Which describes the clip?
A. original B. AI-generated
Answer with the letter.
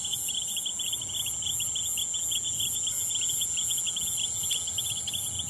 A